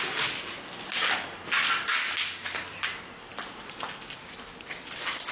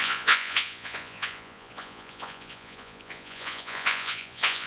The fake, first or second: second